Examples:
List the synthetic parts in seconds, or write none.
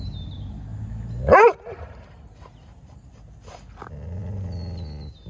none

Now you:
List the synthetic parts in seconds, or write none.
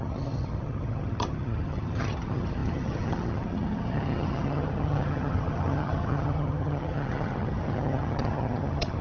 0.0-9.0 (vocoder, HiFi-GAN)